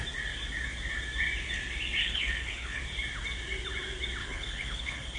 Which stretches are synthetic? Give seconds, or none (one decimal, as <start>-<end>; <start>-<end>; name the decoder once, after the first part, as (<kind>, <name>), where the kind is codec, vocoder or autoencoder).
2.0-2.8 (codec, HILCodec); 4.2-5.2